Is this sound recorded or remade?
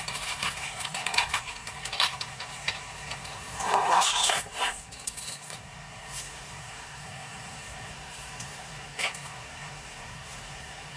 remade